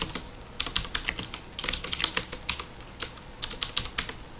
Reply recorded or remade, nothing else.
recorded